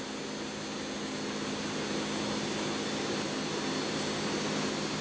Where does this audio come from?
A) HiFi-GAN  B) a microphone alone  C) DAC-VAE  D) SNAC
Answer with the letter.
B